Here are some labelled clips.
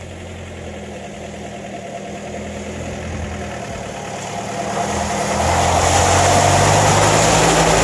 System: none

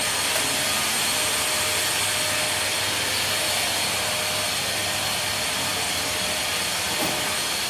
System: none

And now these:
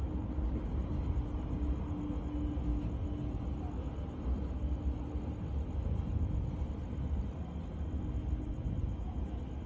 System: none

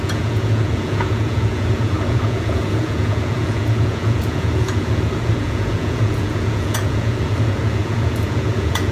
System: vocoder, Vocos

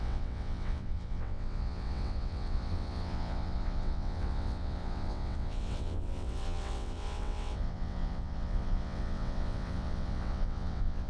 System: vocoder, WaveNeXt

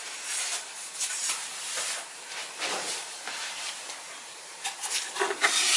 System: vocoder, BigVGAN v2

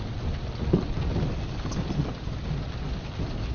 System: none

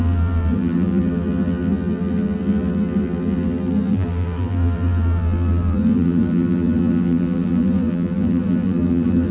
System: vocoder, BigVGAN v2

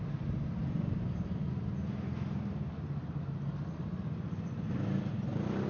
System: none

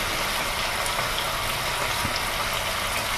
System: none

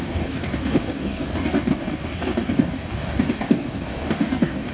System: codec, DAC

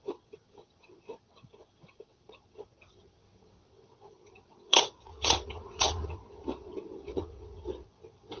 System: vocoder, WaveNeXt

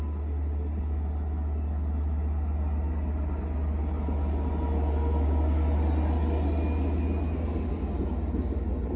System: none